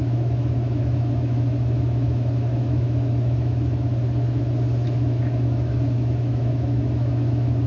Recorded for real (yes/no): no